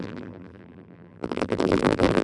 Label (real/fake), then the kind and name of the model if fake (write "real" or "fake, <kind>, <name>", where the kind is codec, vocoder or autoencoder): fake, vocoder, BigVGAN v2